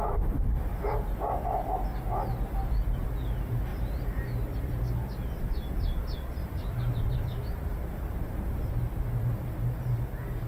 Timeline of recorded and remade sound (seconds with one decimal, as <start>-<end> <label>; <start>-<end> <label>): 0.0-3.7 recorded; 3.7-4.8 remade; 4.8-6.4 recorded; 6.4-8.7 remade; 8.7-10.5 recorded